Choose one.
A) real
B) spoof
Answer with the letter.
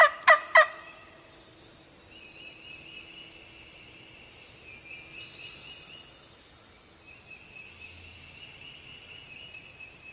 A